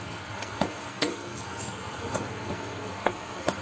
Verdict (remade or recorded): remade